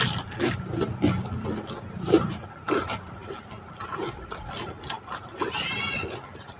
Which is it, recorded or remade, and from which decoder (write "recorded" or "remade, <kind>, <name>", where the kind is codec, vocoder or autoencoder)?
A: recorded